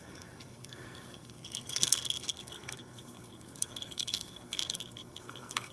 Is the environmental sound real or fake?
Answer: fake